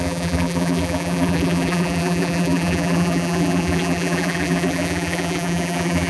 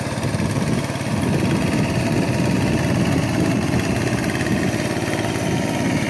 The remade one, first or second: first